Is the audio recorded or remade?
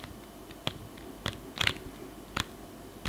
recorded